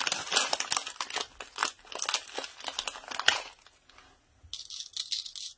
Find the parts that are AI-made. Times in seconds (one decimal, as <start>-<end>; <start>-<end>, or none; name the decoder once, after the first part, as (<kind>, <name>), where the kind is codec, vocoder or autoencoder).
none